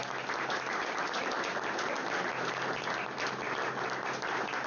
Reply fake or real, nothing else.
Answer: real